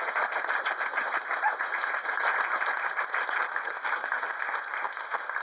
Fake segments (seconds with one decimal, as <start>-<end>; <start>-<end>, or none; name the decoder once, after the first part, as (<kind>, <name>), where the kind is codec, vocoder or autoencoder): none